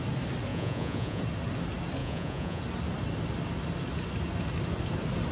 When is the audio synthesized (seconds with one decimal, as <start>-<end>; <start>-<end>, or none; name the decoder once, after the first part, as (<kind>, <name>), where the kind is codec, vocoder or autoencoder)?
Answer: 0.5-1.2 (vocoder, Vocos); 2.0-2.6